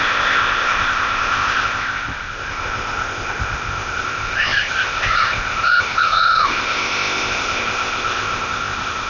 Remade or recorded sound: remade